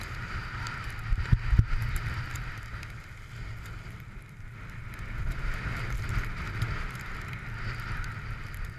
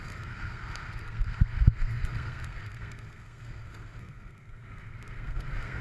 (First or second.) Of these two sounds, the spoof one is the second